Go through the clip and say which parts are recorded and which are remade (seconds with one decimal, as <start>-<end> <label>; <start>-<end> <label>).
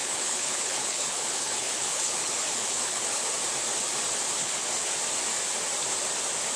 0.0-3.3 remade; 3.3-4.4 recorded; 4.4-4.9 remade; 4.9-6.6 recorded